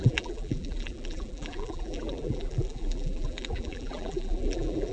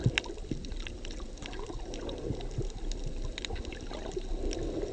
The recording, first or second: second